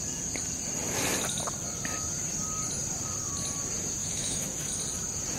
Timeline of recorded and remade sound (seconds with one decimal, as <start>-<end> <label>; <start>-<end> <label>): 0.0-4.0 recorded; 4.0-4.7 remade; 4.7-5.4 recorded